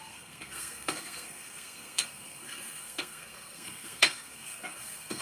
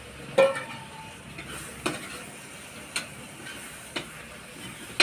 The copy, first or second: first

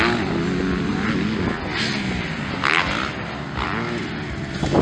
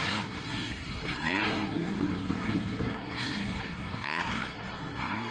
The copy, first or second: second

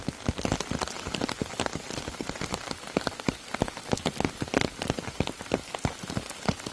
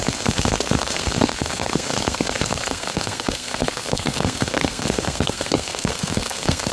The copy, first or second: second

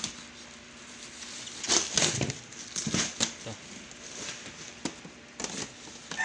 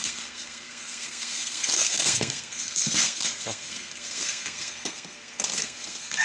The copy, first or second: second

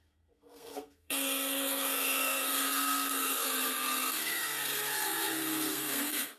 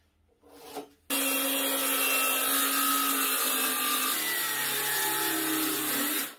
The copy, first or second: first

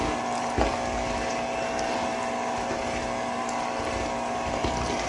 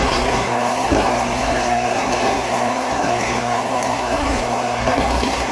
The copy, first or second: second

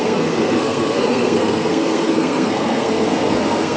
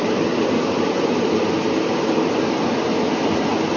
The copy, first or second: first